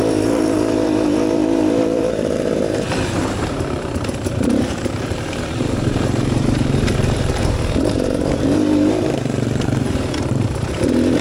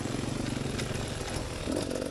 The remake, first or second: first